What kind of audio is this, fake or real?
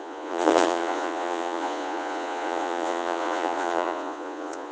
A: fake